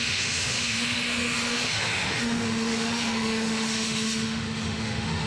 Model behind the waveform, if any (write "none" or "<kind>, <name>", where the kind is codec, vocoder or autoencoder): autoencoder, DAC-VAE